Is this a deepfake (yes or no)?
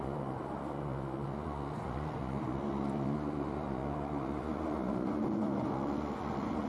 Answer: yes